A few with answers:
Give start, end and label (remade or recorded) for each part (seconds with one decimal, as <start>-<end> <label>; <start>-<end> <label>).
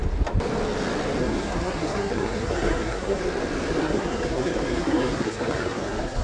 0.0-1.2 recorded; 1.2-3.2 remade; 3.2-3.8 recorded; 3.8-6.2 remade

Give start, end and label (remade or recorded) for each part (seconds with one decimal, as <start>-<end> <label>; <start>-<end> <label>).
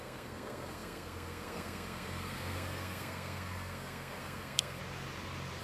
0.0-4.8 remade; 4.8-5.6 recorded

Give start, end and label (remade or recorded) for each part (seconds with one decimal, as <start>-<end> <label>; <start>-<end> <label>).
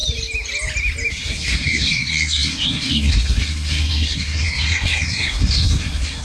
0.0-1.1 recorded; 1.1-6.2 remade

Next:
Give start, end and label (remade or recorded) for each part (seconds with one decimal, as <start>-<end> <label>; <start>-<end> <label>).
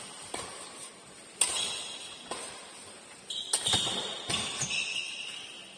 0.0-5.8 recorded